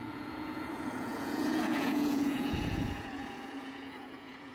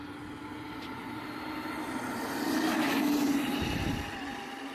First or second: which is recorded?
second